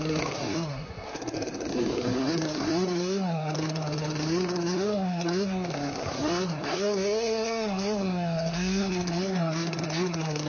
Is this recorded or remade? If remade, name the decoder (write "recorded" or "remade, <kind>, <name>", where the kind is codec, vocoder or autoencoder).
remade, codec, SNAC